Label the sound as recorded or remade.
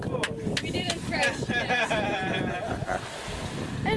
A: recorded